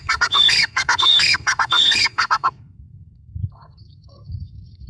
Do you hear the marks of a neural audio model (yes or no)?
yes